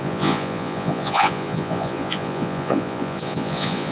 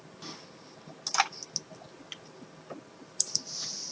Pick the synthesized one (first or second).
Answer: first